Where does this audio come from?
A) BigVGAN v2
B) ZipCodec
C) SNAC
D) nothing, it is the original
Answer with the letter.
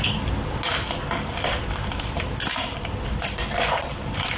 A